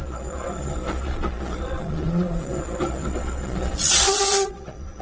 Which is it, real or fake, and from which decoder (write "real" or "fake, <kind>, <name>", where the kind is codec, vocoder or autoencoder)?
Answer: fake, vocoder, Vocos